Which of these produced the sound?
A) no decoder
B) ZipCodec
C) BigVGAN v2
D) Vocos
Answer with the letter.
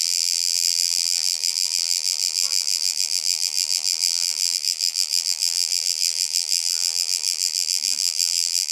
C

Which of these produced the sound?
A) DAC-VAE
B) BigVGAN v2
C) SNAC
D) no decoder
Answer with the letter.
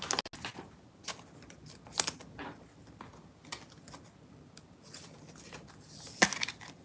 D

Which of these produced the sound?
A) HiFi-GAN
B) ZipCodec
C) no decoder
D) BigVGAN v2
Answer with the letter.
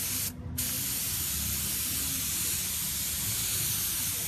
C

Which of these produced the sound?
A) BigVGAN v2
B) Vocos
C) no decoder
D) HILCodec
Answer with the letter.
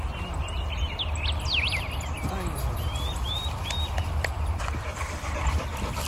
A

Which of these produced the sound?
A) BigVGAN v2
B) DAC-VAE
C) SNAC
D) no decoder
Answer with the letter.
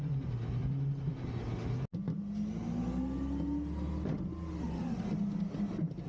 D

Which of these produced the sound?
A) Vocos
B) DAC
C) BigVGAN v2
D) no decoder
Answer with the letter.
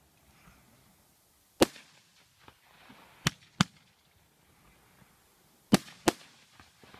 D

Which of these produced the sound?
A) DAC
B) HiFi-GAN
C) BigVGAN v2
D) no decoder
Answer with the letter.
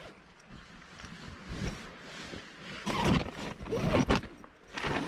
D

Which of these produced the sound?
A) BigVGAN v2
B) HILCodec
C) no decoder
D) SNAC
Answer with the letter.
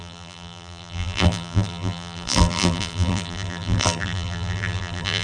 A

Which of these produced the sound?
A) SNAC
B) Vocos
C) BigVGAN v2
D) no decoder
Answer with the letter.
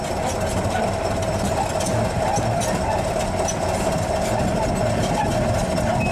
D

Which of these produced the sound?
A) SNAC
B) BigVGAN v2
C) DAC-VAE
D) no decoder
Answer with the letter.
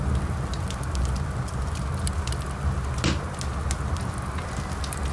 D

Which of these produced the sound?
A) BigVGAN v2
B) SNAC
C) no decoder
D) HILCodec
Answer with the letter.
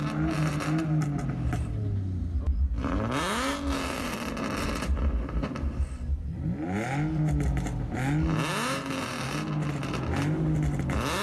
C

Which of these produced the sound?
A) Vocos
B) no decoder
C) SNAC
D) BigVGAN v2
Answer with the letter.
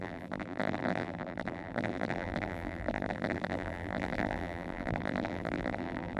D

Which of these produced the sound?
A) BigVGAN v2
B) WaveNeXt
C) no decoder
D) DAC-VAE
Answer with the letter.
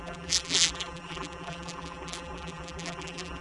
A